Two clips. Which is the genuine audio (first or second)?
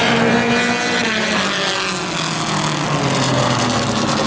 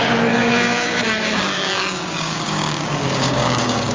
first